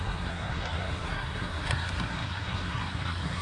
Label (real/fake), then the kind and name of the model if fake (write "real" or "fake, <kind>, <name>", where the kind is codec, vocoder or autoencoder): fake, codec, SNAC